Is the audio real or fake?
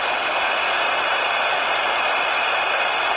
real